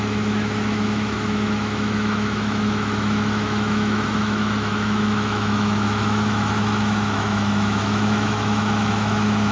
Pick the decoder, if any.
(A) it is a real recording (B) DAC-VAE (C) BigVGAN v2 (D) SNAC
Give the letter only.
B